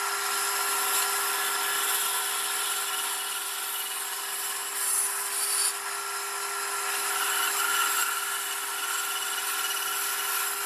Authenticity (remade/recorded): recorded